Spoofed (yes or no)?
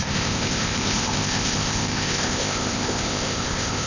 yes